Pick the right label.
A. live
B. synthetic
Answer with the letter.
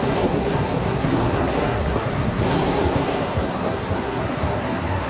B